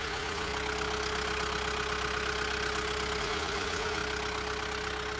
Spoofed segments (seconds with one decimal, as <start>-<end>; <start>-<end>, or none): 0.0-0.5; 3.2-4.0